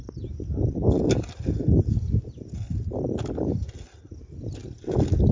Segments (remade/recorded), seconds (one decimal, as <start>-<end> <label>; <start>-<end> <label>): 0.0-5.3 recorded